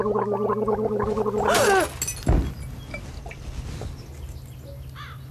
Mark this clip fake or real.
real